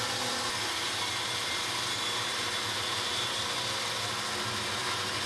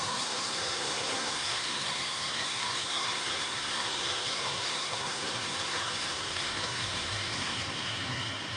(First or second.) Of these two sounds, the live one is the first